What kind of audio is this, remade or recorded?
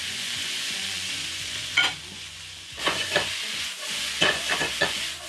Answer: remade